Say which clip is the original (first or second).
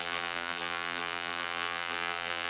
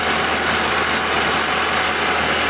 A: second